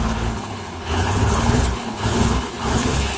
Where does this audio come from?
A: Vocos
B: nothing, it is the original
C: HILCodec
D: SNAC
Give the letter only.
C